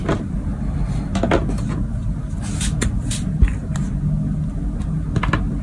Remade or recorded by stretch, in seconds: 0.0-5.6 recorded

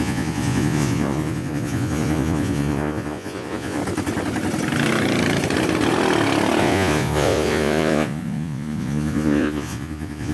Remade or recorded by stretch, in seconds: 0.0-3.8 remade; 3.8-6.6 recorded; 6.6-10.3 remade

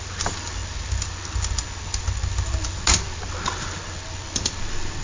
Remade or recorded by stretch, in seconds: 0.0-5.0 recorded

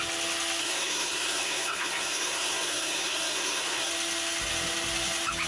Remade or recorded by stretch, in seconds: 0.0-0.6 recorded; 0.6-3.9 remade; 3.9-5.5 recorded

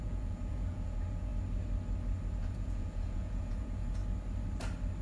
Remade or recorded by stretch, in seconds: 0.0-1.3 remade; 1.3-2.4 recorded; 2.4-4.0 remade; 4.0-5.0 recorded

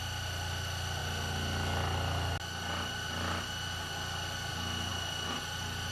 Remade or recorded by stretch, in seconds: 0.0-5.9 recorded

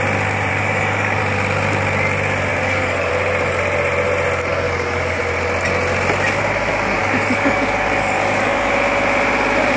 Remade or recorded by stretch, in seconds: 0.0-0.5 recorded; 0.5-1.2 remade; 1.2-2.5 recorded; 2.5-3.1 remade; 3.1-4.5 recorded; 4.5-5.2 remade; 5.2-7.0 recorded; 7.0-8.7 remade; 8.7-9.8 recorded